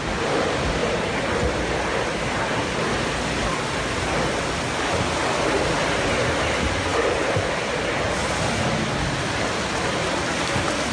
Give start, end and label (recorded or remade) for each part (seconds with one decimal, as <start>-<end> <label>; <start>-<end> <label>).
0.0-10.9 recorded